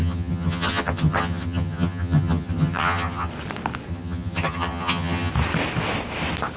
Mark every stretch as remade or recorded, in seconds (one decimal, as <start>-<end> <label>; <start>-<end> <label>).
0.0-3.3 remade; 3.3-3.9 recorded; 3.9-5.3 remade; 5.3-6.6 recorded